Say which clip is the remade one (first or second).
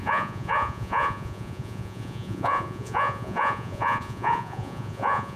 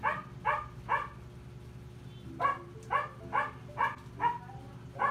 first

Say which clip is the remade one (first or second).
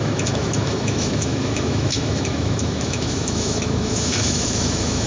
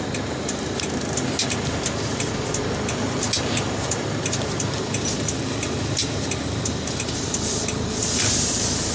first